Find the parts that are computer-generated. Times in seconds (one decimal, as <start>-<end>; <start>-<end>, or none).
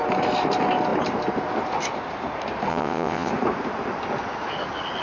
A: 2.7-3.3